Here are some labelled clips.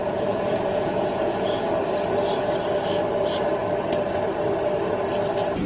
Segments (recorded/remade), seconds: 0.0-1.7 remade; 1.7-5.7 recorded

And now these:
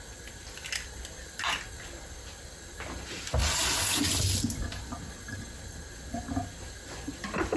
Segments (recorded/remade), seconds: 0.0-3.4 recorded; 3.4-4.1 remade; 4.1-7.6 recorded

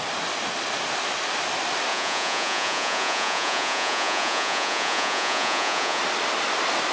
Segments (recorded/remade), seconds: 0.0-1.9 recorded; 1.9-6.0 remade; 6.0-6.9 recorded

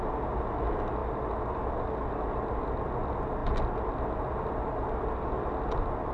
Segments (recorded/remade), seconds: 0.0-6.1 recorded

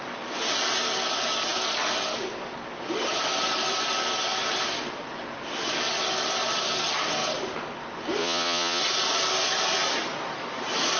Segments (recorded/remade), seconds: 0.0-8.2 recorded; 8.2-8.8 remade; 8.8-11.0 recorded

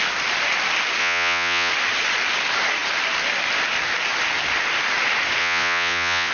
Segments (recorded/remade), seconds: 0.0-1.0 recorded; 1.0-1.7 remade; 1.7-5.4 recorded; 5.4-6.3 remade